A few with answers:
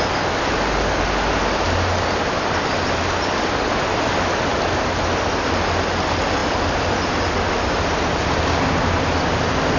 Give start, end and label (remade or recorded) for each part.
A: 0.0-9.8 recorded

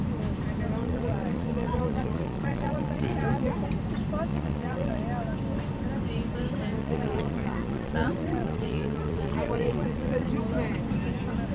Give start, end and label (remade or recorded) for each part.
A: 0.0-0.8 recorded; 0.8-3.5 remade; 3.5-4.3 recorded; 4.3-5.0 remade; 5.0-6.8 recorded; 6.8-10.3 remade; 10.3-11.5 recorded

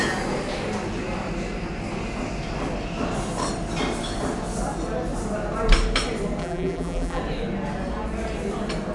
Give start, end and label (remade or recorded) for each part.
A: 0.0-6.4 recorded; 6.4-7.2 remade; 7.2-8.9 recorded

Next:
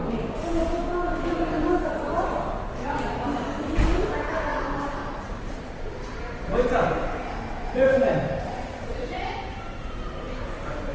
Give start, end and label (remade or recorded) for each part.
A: 0.0-5.0 recorded; 5.0-5.5 remade; 5.5-8.9 recorded; 8.9-9.9 remade; 9.9-10.9 recorded

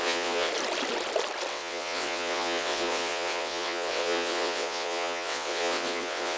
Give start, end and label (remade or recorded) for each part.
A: 0.0-0.5 remade; 0.5-1.5 recorded; 1.5-6.4 remade

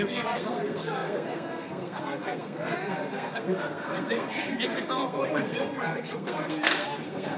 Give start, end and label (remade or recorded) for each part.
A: 0.0-7.4 remade